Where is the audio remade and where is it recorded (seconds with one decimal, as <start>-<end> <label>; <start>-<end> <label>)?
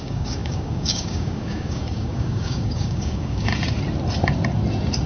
0.0-3.5 remade; 3.5-5.1 recorded